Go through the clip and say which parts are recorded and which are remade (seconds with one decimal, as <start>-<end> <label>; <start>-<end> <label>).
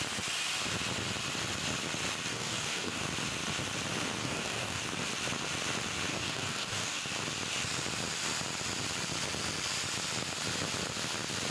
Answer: 0.0-2.3 recorded; 2.3-3.0 remade; 3.0-4.2 recorded; 4.2-4.8 remade; 4.8-6.1 recorded; 6.1-7.0 remade; 7.0-11.5 recorded